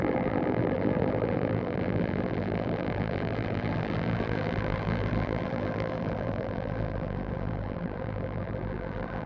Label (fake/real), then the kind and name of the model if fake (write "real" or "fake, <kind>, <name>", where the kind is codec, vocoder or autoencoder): fake, vocoder, BigVGAN v2